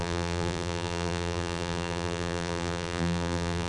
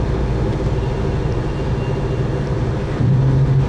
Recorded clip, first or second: second